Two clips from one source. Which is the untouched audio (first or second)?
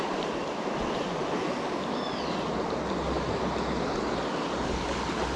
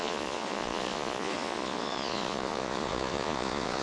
first